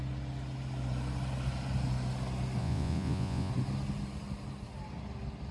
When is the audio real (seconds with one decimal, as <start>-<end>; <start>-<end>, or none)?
0.0-2.6; 3.5-5.5